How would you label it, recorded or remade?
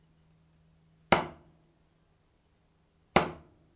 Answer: recorded